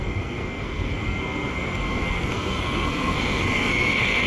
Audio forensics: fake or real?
fake